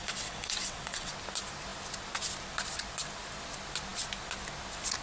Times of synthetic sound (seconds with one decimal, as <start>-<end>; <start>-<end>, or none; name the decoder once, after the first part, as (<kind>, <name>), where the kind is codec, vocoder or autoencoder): 0.0-1.1 (vocoder, WaveNeXt)